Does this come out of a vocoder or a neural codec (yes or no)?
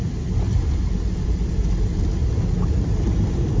yes